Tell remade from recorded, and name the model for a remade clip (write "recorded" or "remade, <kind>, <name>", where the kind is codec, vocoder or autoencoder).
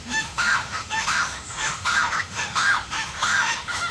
remade, autoencoder, DAC-VAE